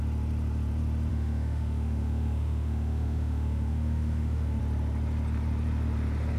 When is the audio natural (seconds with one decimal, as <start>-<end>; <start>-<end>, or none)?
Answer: 0.0-1.1; 4.6-6.4